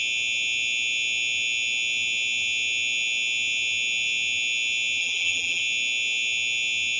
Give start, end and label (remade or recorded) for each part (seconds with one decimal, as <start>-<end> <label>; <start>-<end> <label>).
0.0-5.0 recorded; 5.0-5.6 remade; 5.6-7.0 recorded